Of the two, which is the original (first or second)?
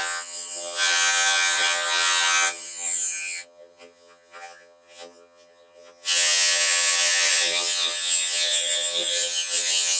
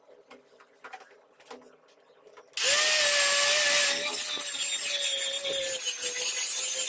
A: second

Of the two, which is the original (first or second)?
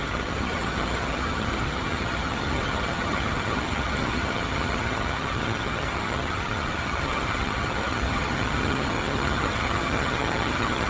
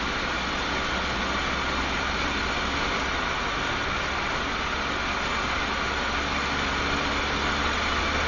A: second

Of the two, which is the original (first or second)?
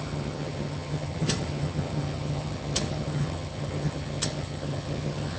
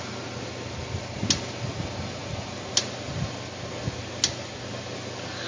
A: second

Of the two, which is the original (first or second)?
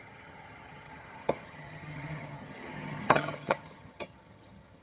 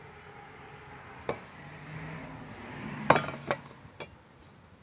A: second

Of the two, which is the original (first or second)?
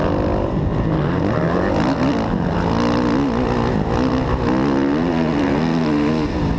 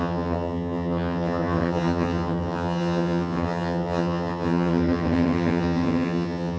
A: first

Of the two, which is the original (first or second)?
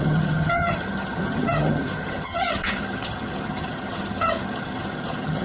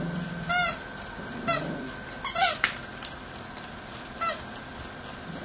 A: second